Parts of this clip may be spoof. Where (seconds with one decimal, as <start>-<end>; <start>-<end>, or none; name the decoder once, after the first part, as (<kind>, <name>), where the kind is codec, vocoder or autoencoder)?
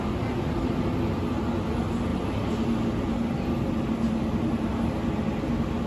none